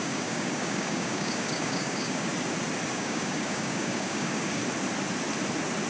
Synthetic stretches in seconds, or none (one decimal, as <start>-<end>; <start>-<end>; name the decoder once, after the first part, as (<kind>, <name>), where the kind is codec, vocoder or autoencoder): 0.0-2.3 (codec, DAC); 2.9-4.6